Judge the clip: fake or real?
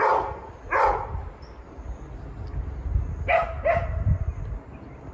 real